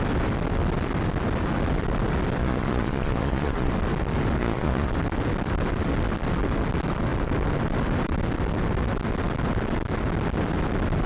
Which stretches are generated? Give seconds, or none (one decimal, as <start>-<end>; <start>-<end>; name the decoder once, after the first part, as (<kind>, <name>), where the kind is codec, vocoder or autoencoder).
2.4-3.7 (vocoder, Vocos); 4.4-4.9